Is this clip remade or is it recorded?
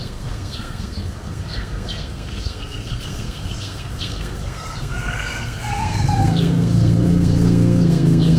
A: remade